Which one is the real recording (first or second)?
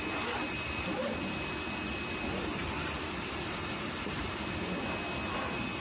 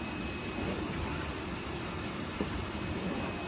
first